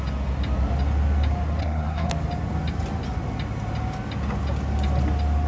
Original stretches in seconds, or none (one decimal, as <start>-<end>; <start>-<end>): 0.0-1.6; 2.1-5.5